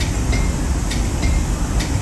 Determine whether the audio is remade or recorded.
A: recorded